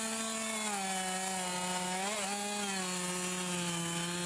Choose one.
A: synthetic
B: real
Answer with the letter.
B